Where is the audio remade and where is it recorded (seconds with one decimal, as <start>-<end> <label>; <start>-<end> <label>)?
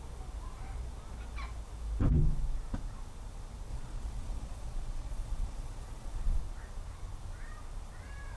0.0-3.7 recorded; 3.7-6.4 remade; 6.4-8.4 recorded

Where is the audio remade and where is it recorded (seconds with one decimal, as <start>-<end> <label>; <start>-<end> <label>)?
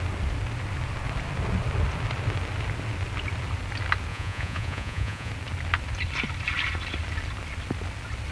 0.0-4.1 recorded; 4.1-5.3 remade; 5.3-8.3 recorded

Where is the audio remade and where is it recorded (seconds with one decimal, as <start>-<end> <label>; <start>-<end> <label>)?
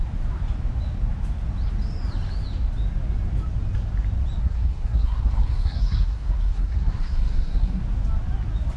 0.0-4.4 recorded; 4.4-7.8 remade; 7.8-8.8 recorded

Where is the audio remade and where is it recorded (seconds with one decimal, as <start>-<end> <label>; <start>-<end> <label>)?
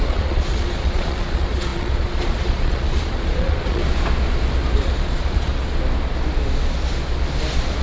0.0-3.8 remade; 3.8-4.7 recorded; 4.7-5.5 remade; 5.5-7.8 recorded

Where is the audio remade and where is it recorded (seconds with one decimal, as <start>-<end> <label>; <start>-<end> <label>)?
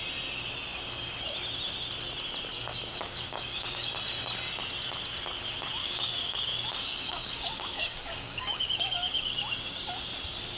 0.0-2.5 recorded; 2.5-3.9 remade; 3.9-5.8 recorded; 5.8-9.9 remade; 9.9-10.6 recorded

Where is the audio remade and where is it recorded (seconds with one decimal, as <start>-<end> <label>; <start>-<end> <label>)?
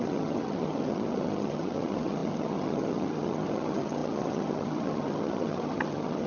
0.0-6.3 remade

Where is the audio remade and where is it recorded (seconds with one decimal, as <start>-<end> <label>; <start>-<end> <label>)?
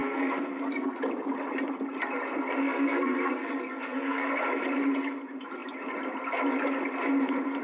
0.0-1.0 remade; 1.0-2.6 recorded; 2.6-4.3 remade; 4.3-7.6 recorded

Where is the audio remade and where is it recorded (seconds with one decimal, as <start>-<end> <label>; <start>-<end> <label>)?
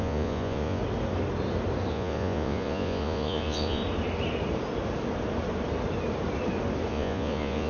0.0-0.8 remade; 0.8-1.9 recorded; 1.9-3.8 remade; 3.8-6.9 recorded; 6.9-7.7 remade